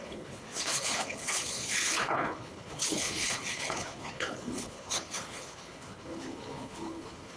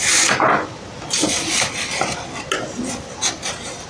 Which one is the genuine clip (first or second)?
second